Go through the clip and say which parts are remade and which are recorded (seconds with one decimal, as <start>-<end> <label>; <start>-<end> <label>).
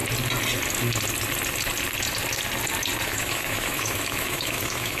0.0-3.0 recorded; 3.0-5.0 remade